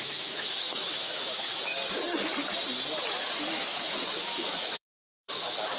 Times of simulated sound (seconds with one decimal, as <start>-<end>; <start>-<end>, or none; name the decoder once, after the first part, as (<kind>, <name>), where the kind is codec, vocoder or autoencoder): 0.0-1.7 (autoencoder, DAC-VAE); 3.4-5.8